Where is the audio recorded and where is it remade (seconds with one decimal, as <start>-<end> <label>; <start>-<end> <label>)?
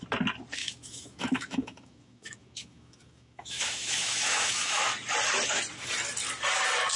0.0-0.6 recorded; 0.6-4.8 remade; 4.8-7.0 recorded